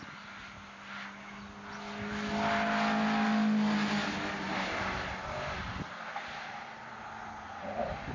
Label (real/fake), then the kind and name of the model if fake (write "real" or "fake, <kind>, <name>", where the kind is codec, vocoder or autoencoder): real